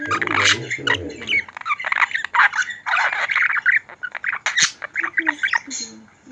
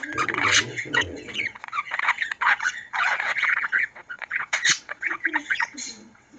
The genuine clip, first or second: first